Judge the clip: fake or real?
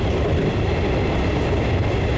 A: fake